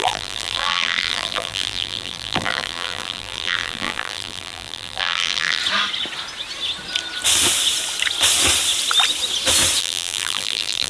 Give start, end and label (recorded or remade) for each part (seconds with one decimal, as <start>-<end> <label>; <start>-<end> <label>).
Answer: 0.0-5.6 remade; 5.6-9.8 recorded; 9.8-10.9 remade